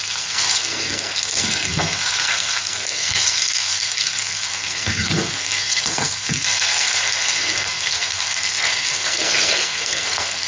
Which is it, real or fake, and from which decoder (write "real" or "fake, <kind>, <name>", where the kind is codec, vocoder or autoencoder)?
fake, codec, SNAC